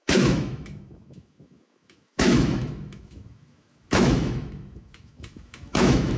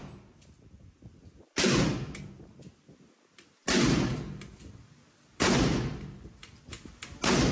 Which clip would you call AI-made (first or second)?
first